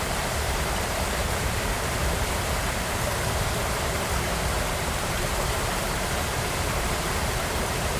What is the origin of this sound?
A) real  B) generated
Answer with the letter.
B